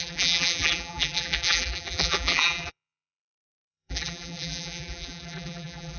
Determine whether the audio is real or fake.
fake